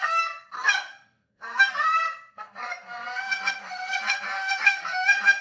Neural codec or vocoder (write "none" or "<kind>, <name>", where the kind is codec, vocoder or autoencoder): codec, SNAC